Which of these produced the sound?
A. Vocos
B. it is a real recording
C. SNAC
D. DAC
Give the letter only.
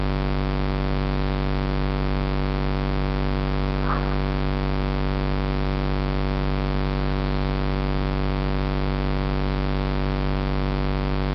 B